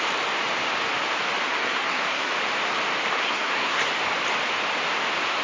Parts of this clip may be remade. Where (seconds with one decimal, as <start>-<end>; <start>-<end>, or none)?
1.4-2.3; 3.1-3.8